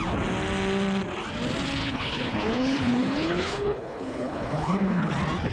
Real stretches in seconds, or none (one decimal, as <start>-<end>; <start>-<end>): 0.0-1.8; 5.1-5.5